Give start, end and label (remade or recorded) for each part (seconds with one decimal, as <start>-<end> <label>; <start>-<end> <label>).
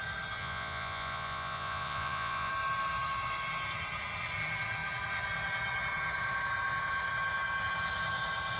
0.0-0.4 recorded; 0.4-2.5 remade; 2.5-8.6 recorded